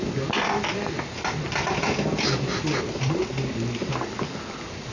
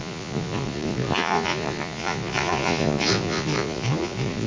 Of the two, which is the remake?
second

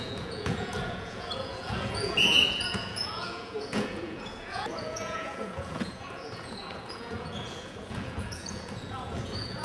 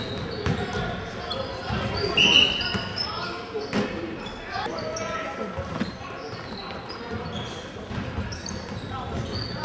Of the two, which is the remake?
first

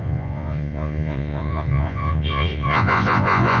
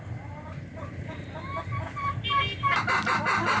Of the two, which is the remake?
first